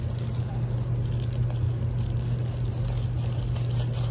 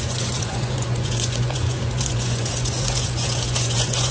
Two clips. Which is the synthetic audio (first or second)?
second